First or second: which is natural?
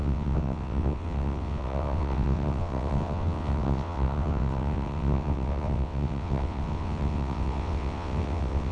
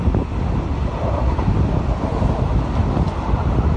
second